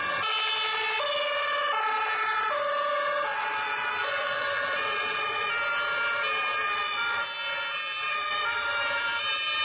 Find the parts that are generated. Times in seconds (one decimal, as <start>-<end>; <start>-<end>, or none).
3.3-5.5

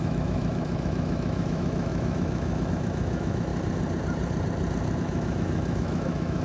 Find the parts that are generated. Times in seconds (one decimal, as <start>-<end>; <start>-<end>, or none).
0.0-3.5; 5.0-6.4